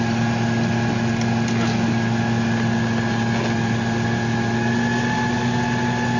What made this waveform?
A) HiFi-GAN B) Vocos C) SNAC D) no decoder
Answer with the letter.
D